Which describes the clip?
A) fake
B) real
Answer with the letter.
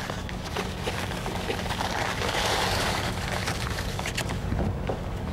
A